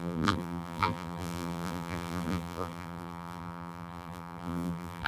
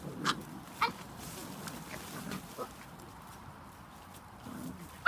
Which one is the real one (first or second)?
second